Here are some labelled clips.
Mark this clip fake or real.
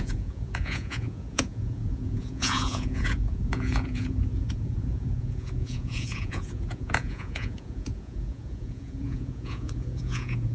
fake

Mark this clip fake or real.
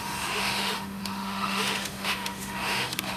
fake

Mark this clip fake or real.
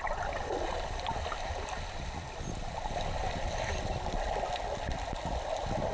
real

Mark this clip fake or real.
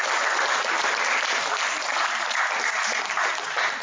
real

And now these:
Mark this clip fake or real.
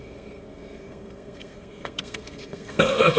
fake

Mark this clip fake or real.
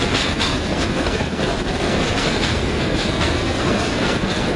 fake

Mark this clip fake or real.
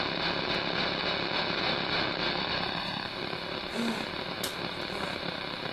real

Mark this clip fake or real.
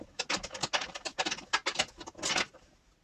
real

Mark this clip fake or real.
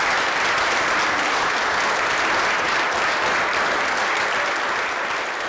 real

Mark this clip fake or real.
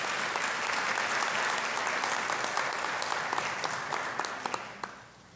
real